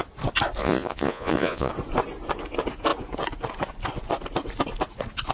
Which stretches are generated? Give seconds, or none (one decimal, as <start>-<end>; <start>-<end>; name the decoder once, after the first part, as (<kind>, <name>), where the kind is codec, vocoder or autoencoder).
0.6-1.7 (vocoder, Vocos)